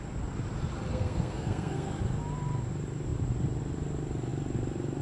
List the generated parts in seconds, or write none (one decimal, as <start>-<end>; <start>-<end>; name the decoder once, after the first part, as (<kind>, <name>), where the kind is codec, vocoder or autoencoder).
0.9-2.0 (codec, SNAC)